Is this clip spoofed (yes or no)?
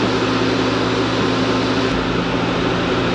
no